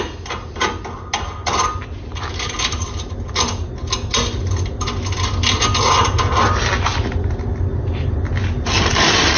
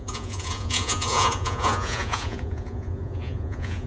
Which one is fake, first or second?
second